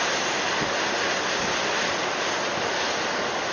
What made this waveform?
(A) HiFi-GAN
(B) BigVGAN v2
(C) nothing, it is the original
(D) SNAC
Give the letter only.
C